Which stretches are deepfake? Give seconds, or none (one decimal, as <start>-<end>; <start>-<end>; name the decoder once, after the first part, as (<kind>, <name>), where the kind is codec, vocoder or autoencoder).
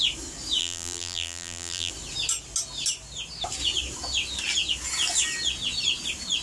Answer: 0.6-1.9 (vocoder, BigVGAN v2)